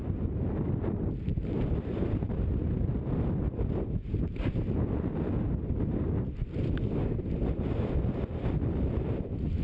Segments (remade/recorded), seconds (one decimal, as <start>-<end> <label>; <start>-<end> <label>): 0.0-1.3 remade; 1.3-6.5 recorded; 6.5-9.6 remade

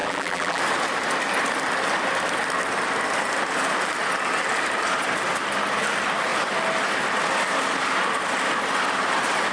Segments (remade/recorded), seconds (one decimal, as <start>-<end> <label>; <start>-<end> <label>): 0.0-0.6 remade; 0.6-9.5 recorded

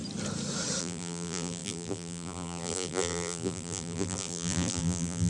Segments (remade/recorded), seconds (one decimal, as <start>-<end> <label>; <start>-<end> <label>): 0.0-0.8 recorded; 0.8-5.3 remade

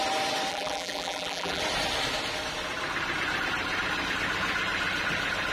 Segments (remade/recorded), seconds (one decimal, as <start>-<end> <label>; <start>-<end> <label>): 0.0-0.5 recorded; 0.5-1.6 remade; 1.6-5.5 recorded

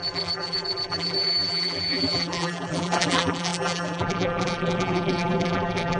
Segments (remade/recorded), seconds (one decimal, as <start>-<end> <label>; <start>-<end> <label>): 0.0-6.0 remade

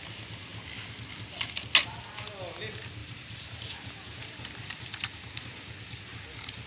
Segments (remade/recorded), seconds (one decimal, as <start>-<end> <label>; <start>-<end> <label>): 0.0-3.0 recorded; 3.0-4.5 remade; 4.5-6.7 recorded

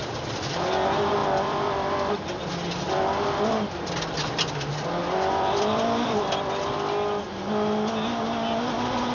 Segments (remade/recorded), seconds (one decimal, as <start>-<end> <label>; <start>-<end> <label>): 0.0-1.2 recorded; 1.2-3.7 remade; 3.7-5.0 recorded; 5.0-6.5 remade; 6.5-9.1 recorded